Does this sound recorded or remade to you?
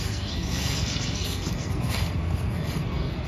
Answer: remade